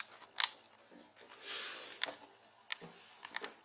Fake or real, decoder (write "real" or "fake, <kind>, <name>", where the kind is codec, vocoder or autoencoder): real